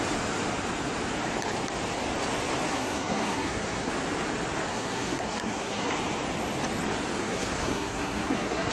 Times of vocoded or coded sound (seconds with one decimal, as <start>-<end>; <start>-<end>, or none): 2.7-3.9; 4.7-5.9; 7.2-8.7